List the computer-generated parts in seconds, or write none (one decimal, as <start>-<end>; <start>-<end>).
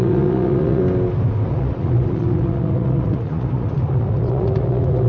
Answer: 0.0-0.8; 1.5-5.1